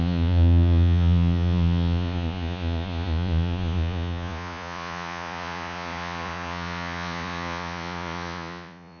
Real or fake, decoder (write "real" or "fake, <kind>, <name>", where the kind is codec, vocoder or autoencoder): fake, vocoder, Vocos